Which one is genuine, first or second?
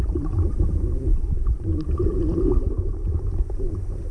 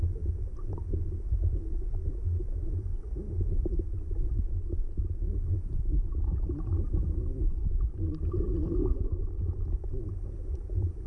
second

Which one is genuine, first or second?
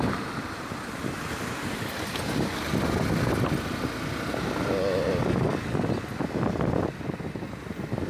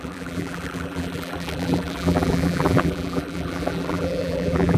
first